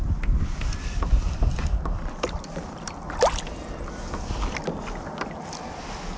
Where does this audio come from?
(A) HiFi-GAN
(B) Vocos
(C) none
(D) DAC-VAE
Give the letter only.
C